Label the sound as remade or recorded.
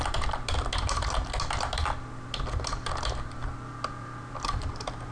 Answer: recorded